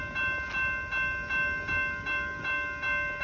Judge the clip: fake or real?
real